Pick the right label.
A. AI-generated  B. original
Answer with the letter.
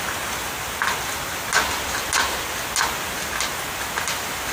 B